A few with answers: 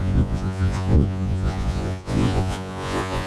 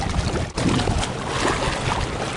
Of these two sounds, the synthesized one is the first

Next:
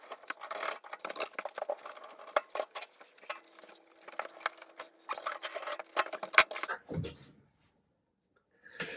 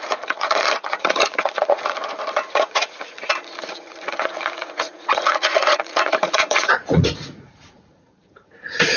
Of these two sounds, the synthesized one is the second